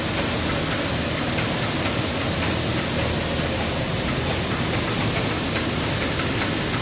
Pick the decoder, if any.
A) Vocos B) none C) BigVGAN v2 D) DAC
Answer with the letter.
B